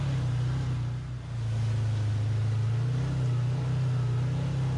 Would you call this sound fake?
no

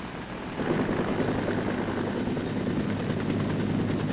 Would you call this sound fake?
no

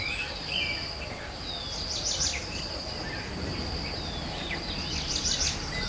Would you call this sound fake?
no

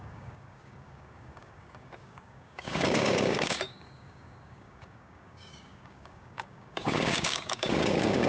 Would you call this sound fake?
yes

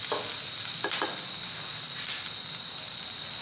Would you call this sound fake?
no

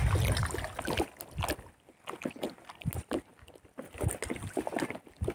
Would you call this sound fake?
no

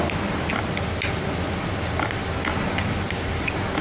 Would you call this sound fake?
no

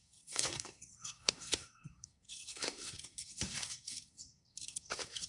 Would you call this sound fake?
yes